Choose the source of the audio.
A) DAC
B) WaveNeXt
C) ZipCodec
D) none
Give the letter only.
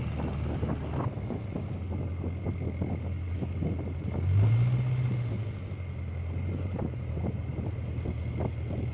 D